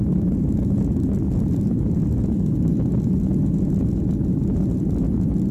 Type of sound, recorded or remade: recorded